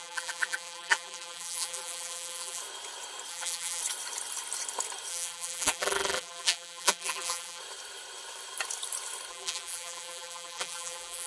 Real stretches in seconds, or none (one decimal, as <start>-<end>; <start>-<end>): 2.6-3.3; 3.8-5.1; 7.6-9.3